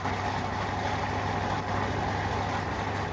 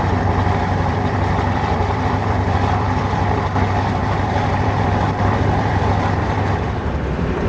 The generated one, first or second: second